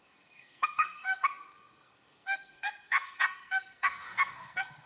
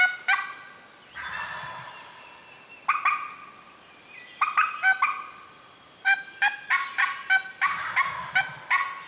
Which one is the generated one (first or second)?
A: first